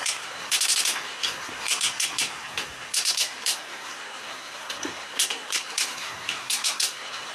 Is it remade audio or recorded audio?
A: remade